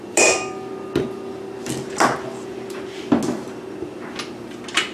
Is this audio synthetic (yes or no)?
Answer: no